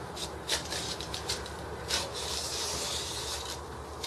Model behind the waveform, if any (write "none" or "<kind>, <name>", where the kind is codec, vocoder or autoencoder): vocoder, BigVGAN v2